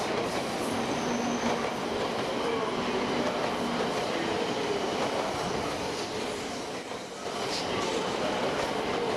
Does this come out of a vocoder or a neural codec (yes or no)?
no